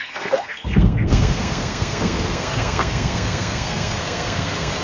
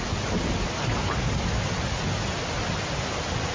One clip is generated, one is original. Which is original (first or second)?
second